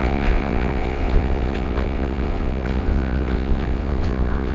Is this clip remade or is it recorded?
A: remade